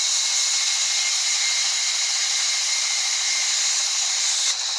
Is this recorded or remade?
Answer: recorded